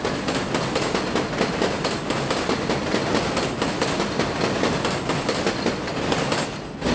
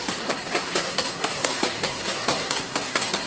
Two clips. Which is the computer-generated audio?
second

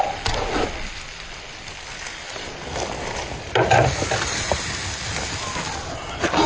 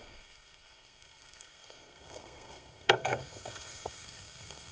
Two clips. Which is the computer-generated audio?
second